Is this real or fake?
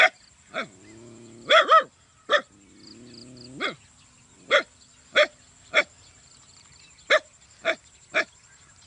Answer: real